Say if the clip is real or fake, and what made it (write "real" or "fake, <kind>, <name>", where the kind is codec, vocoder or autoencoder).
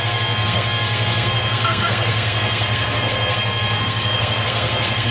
fake, codec, SNAC